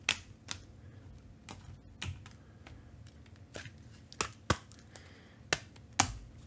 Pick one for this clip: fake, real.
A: real